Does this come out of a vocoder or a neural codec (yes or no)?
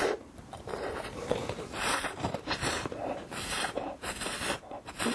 yes